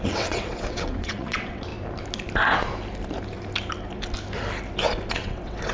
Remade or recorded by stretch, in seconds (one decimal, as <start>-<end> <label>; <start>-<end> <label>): 0.0-1.7 remade; 1.7-5.1 recorded; 5.1-5.7 remade